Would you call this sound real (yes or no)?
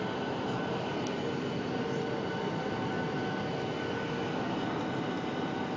yes